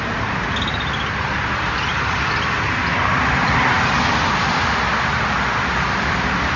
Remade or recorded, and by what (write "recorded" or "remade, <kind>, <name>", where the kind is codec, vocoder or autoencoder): recorded